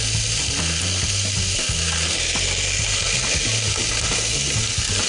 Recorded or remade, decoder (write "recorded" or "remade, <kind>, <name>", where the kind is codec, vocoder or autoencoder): recorded